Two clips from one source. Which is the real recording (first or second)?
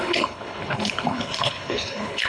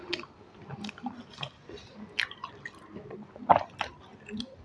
second